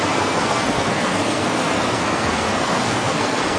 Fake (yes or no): yes